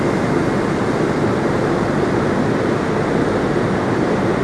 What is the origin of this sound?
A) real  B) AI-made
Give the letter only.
A